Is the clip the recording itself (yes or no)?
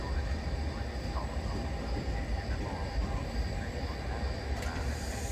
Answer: yes